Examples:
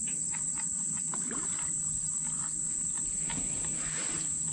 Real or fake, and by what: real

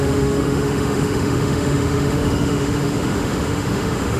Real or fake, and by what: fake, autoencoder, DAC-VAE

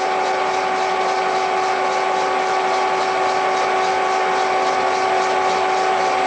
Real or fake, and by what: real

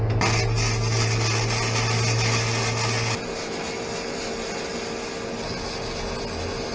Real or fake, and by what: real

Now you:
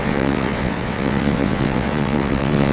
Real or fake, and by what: fake, vocoder, WaveNeXt